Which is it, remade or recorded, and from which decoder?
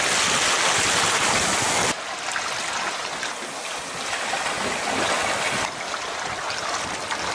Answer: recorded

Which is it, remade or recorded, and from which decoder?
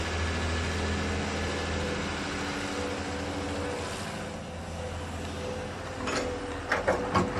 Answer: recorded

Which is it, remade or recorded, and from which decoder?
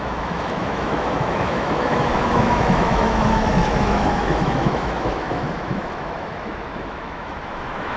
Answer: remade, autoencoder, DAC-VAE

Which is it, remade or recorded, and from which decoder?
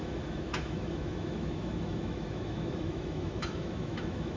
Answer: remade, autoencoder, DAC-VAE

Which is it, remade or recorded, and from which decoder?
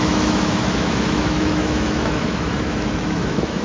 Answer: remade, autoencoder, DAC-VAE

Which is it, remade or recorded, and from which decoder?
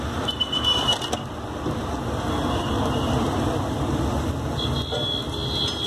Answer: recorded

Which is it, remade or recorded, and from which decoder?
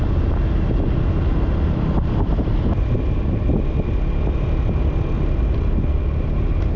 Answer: recorded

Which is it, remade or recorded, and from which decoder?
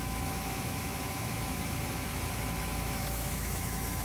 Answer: remade, autoencoder, DAC-VAE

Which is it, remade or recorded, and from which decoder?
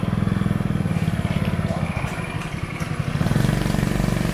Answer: recorded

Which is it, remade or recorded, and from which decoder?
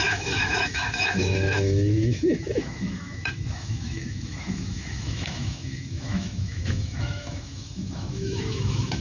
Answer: remade, autoencoder, DAC-VAE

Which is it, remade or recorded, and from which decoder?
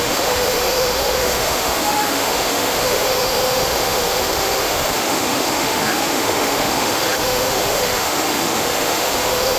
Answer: remade, autoencoder, DAC-VAE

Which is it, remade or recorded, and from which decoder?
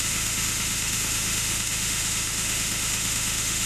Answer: remade, autoencoder, DAC-VAE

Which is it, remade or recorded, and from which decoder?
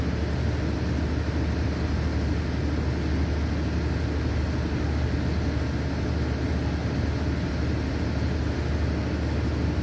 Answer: recorded